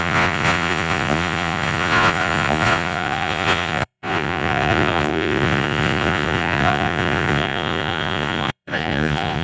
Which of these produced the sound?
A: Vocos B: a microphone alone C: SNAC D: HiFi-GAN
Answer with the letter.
A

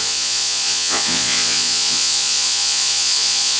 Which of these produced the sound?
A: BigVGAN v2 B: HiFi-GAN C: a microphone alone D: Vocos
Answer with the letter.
D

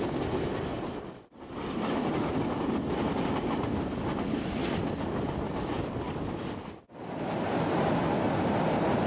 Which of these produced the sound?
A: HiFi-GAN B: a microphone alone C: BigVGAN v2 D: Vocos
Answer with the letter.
B